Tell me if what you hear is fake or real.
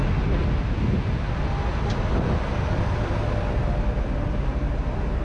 real